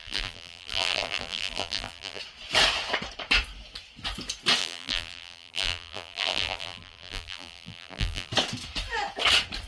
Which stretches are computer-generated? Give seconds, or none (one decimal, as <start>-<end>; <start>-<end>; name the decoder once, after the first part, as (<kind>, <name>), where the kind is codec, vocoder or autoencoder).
0.0-2.2 (vocoder, BigVGAN v2); 4.6-8.3